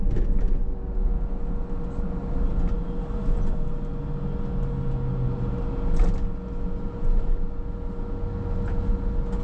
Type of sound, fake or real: real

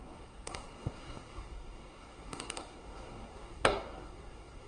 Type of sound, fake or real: fake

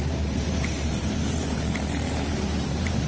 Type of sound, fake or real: fake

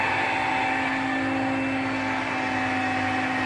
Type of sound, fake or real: real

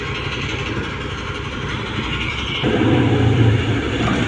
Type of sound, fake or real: fake